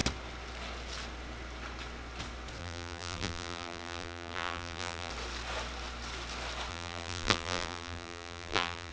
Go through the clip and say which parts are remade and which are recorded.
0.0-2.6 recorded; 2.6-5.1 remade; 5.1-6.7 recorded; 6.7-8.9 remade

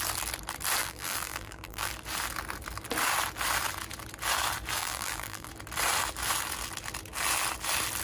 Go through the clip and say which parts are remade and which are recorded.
0.0-0.8 recorded; 0.8-1.9 remade; 1.9-4.8 recorded; 4.8-5.5 remade; 5.5-8.0 recorded